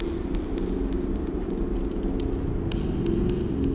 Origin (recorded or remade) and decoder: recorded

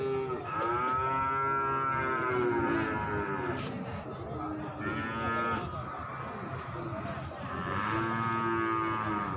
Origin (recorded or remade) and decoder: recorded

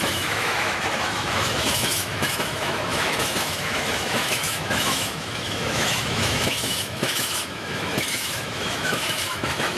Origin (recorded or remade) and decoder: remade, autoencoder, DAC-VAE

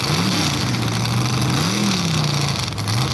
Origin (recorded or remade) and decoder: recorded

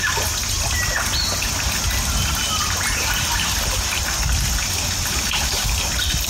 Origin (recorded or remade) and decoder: recorded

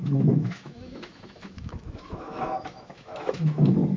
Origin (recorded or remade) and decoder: remade, autoencoder, DAC-VAE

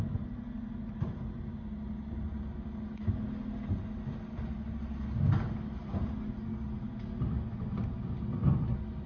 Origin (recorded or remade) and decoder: recorded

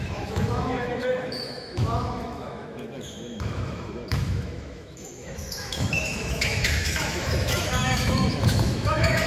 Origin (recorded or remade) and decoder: remade, autoencoder, DAC-VAE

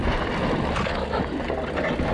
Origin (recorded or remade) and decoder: recorded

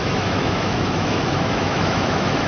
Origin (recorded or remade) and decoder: remade, autoencoder, DAC-VAE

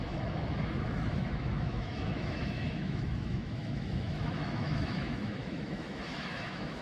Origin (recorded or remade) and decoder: remade, autoencoder, DAC-VAE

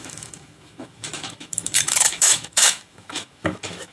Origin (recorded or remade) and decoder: remade, autoencoder, DAC-VAE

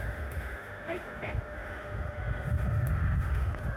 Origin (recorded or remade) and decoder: remade, autoencoder, DAC-VAE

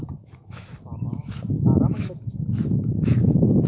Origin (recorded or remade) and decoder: remade, autoencoder, DAC-VAE